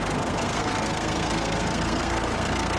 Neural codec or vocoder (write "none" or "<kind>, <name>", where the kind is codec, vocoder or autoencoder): codec, SNAC